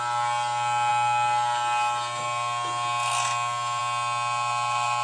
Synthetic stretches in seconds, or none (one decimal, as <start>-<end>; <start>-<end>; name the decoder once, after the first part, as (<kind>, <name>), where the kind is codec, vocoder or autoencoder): none